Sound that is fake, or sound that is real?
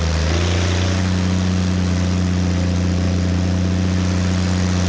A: real